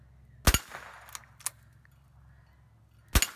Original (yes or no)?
yes